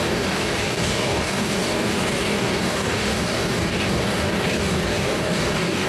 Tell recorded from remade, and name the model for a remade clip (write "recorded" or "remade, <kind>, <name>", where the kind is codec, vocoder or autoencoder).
remade, codec, DAC